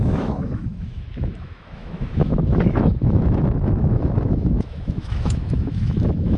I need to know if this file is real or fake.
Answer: fake